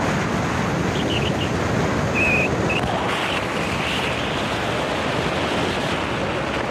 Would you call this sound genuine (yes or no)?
yes